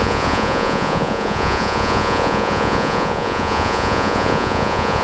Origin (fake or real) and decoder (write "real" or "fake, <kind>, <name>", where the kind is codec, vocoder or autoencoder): fake, vocoder, Vocos